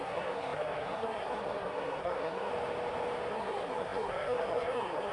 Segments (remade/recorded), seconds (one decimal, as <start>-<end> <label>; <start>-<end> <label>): 0.0-2.5 remade; 2.5-3.3 recorded; 3.3-5.1 remade